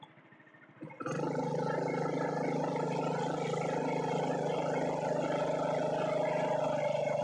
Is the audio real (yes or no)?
yes